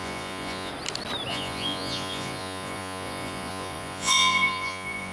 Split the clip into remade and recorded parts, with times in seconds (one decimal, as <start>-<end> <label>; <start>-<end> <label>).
0.0-0.7 remade; 0.7-1.3 recorded; 1.3-5.1 remade